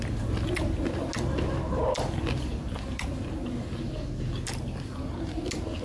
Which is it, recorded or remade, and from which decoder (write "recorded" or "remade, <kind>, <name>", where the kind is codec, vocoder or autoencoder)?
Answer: recorded